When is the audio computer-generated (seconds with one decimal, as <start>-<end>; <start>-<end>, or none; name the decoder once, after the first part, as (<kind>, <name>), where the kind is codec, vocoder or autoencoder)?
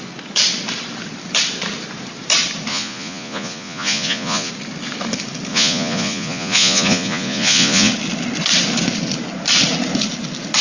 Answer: 2.7-4.5 (vocoder, Vocos); 5.5-7.9